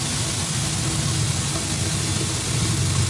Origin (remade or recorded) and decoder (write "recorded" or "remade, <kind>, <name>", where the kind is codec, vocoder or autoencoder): recorded